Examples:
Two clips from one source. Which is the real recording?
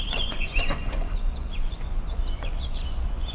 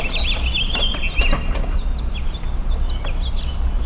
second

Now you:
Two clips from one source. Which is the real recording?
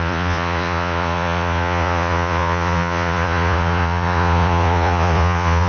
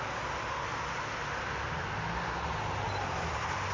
second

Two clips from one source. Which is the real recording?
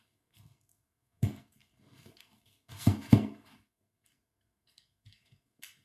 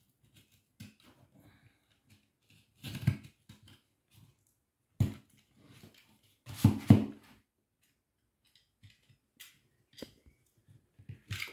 second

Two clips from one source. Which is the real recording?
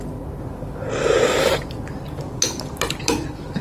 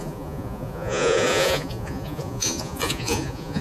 first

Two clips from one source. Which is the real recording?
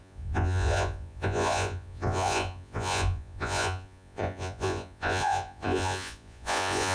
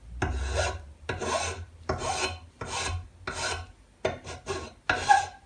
second